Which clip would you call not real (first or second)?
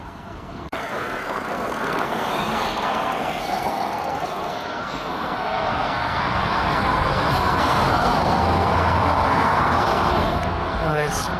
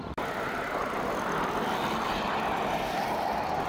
first